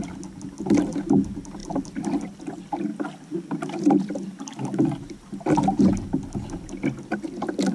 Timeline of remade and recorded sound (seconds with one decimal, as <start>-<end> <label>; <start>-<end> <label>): 0.0-7.7 recorded